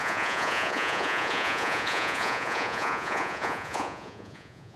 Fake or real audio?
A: fake